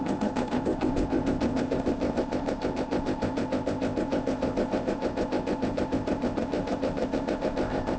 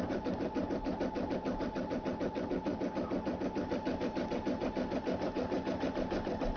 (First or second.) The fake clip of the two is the first